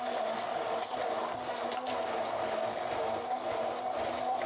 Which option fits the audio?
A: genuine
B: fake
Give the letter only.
A